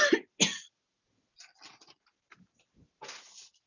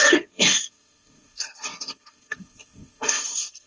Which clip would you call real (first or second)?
first